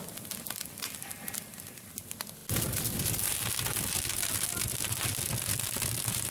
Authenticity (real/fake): real